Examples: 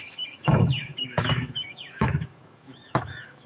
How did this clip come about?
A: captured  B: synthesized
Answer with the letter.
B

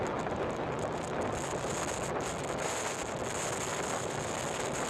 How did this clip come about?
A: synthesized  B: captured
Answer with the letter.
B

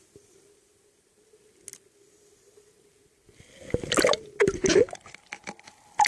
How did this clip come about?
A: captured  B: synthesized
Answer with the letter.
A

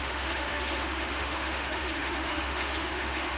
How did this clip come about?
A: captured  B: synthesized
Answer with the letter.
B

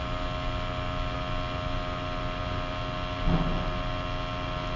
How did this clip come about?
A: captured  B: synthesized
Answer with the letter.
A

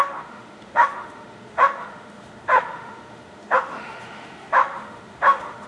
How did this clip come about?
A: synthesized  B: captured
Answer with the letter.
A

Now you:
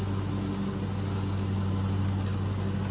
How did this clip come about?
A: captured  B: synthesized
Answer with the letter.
A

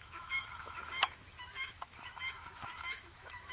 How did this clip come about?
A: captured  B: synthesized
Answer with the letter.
B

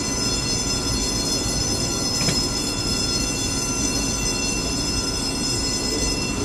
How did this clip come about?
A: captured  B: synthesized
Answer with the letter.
A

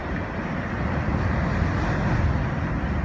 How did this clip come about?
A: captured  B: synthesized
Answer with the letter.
A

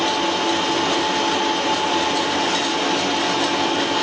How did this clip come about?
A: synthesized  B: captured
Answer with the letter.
B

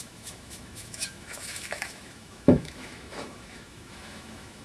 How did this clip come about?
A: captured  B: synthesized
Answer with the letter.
B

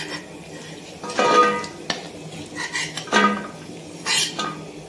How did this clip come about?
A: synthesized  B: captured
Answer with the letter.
B